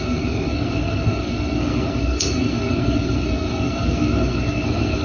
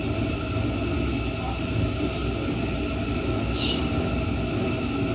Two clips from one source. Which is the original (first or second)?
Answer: second